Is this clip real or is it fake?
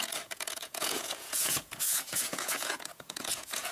fake